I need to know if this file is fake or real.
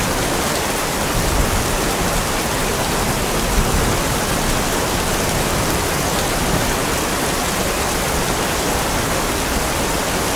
fake